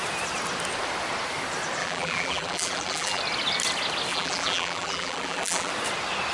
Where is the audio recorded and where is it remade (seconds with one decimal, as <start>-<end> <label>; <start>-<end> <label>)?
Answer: 0.0-1.8 recorded; 1.8-3.2 remade; 3.2-4.1 recorded; 4.1-5.7 remade; 5.7-6.3 recorded